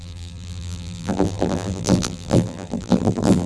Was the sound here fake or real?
fake